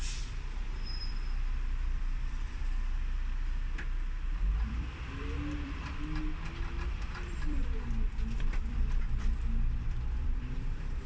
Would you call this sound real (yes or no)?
no